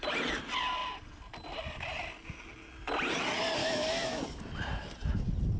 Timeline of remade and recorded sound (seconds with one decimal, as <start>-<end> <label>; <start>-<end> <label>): 0.0-3.6 recorded; 3.6-4.2 remade; 4.2-5.6 recorded